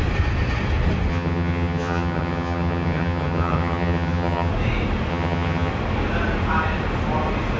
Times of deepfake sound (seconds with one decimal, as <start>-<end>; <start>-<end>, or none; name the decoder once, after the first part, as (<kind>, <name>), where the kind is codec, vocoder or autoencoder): 1.1-4.5 (vocoder, HiFi-GAN); 5.1-5.7